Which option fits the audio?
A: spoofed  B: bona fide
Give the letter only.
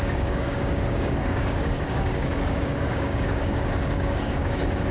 A